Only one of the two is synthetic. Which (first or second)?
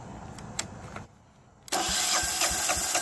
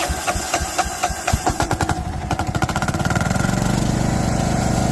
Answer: second